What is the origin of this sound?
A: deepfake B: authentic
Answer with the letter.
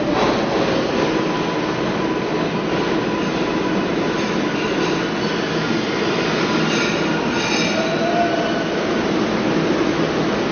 B